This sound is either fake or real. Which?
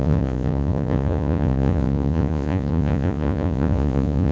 fake